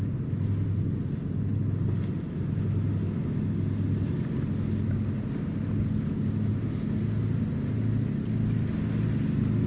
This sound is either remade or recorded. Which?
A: recorded